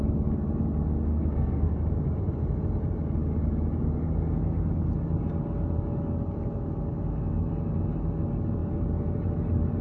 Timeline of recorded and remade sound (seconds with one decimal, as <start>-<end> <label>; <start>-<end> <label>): 0.0-1.1 recorded; 1.1-1.7 remade; 1.7-9.8 recorded